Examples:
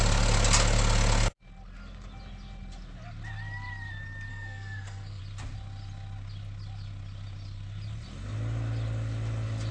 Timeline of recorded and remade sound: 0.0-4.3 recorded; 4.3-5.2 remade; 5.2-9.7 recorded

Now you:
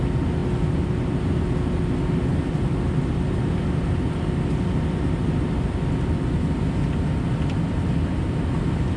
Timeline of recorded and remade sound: 0.0-9.0 recorded